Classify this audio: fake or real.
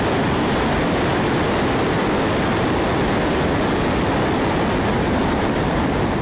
real